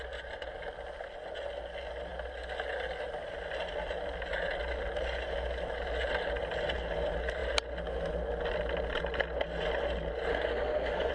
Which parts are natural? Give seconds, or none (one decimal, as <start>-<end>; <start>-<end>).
0.0-10.3